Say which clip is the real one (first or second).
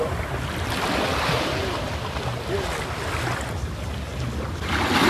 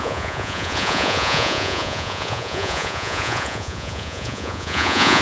first